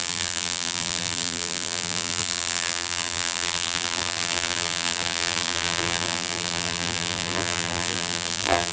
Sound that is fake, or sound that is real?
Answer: fake